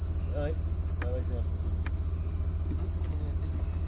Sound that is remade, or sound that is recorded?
recorded